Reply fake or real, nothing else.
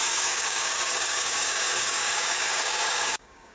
fake